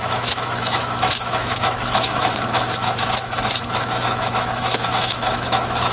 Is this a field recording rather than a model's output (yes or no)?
no